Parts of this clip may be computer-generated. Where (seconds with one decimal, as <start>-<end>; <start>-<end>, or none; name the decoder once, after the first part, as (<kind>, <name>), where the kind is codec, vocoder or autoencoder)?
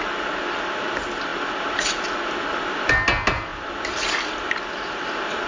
3.5-4.2 (vocoder, BigVGAN v2)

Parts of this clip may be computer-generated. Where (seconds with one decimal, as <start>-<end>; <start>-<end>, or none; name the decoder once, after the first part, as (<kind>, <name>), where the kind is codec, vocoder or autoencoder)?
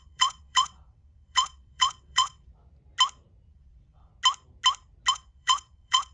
0.0-2.5 (vocoder, WaveNeXt); 3.5-4.1; 5.1-6.1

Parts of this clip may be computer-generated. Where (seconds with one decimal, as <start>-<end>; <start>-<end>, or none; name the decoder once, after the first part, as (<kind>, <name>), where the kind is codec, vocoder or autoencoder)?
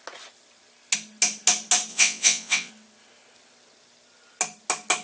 1.9-2.7 (vocoder, WaveNeXt)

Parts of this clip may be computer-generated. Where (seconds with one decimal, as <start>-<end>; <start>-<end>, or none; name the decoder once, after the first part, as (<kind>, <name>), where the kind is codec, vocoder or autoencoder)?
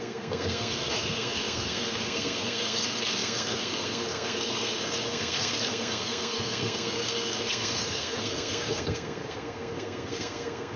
0.0-10.8 (codec, SNAC)